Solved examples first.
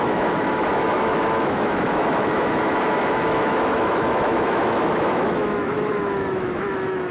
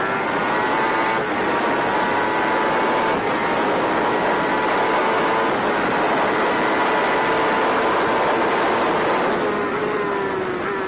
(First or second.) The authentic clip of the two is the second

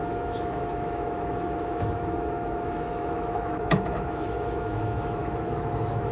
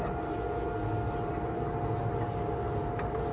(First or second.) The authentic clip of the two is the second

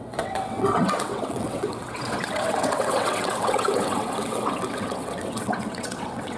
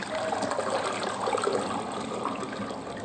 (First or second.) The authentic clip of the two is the second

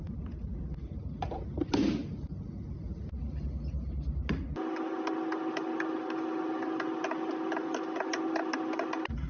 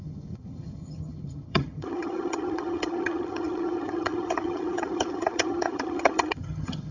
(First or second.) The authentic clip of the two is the first